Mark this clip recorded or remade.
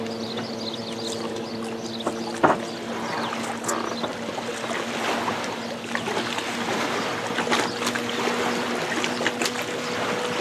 recorded